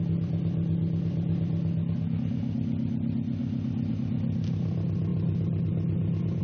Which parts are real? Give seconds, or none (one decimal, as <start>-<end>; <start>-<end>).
0.0-6.4